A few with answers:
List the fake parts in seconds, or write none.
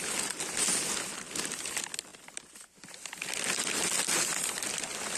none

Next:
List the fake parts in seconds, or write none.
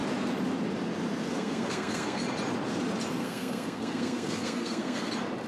1.3-2.2; 3.2-5.1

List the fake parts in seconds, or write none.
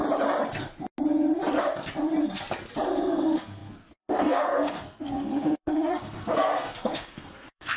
2.9-7.8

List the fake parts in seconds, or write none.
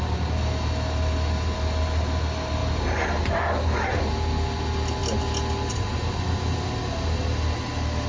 none